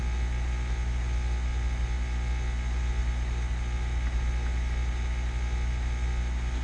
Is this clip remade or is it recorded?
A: recorded